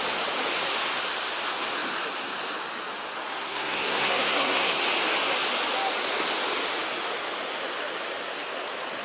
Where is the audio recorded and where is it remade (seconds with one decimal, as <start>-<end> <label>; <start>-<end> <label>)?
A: 0.0-3.3 recorded; 3.3-4.8 remade; 4.8-9.0 recorded